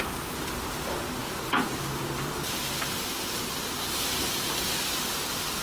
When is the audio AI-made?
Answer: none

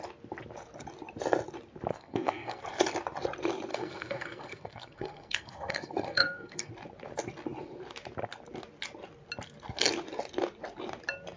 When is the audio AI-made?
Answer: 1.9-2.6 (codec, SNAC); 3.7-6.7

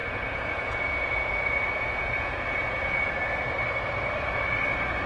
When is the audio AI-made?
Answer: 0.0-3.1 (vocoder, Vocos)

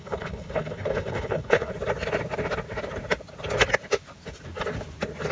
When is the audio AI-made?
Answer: 0.0-1.7 (codec, HILCodec)

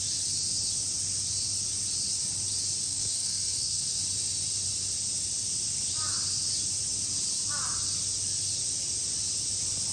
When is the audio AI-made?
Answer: 2.8-4.0 (codec, SNAC)